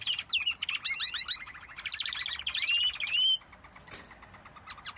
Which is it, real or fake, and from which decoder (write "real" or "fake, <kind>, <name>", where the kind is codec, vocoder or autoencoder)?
real